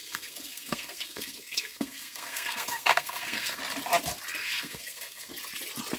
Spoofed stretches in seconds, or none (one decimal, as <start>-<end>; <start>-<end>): 0.0-3.6; 4.4-5.3